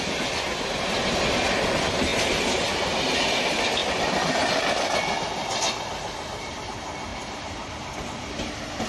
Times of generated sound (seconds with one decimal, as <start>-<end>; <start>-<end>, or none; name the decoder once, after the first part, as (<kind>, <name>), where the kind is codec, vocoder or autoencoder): 7.1-7.7 (vocoder, BigVGAN v2)